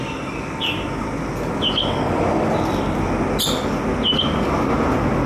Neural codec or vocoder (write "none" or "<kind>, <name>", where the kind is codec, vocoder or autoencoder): none